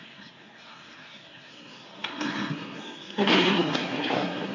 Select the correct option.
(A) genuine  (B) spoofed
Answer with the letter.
B